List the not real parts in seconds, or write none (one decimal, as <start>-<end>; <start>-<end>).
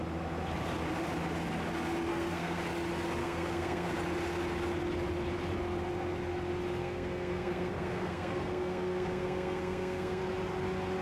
2.1-2.6; 3.2-3.9; 6.8-10.2